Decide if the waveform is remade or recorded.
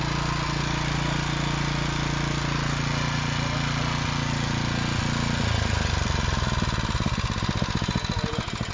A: recorded